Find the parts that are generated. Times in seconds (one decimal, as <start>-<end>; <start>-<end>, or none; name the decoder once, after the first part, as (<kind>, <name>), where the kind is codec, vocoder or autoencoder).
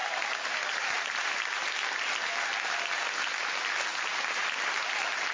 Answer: none